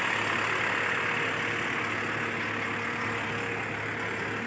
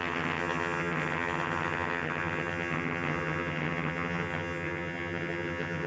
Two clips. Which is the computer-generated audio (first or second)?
second